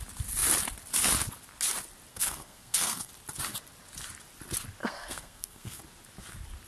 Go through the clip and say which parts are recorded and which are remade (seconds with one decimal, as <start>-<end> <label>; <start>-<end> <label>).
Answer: 0.0-2.1 recorded; 2.1-3.1 remade; 3.1-4.8 recorded; 4.8-5.8 remade; 5.8-6.7 recorded